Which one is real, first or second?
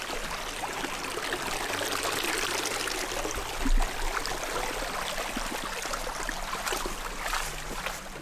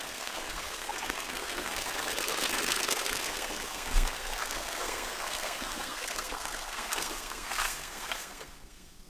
first